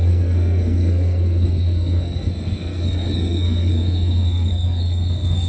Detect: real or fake fake